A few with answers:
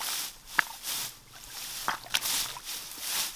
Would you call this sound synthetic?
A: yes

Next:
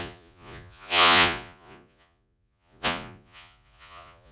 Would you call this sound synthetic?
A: yes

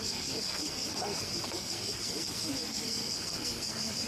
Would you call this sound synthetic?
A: yes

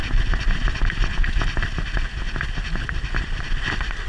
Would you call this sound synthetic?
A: no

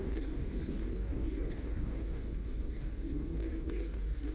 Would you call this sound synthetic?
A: yes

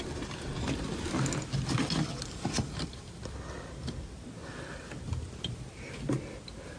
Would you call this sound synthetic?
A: no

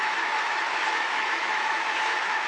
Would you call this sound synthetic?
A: yes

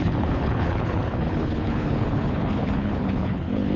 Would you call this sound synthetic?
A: yes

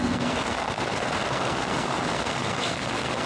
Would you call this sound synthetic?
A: yes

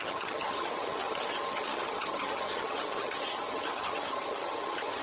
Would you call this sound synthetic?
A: yes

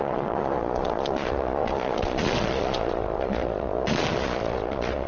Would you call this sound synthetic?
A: yes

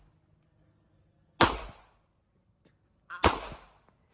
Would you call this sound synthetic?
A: no